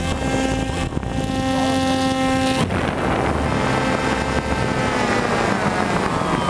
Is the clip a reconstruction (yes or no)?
no